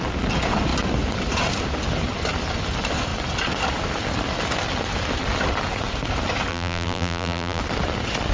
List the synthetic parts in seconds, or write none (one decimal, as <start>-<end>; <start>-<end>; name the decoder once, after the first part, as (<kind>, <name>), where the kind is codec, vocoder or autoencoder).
6.5-7.6 (vocoder, BigVGAN v2)